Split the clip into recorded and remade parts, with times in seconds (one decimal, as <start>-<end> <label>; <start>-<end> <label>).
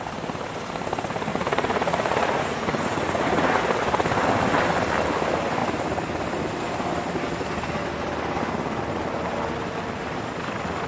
0.0-1.3 recorded; 1.3-3.6 remade; 3.6-10.9 recorded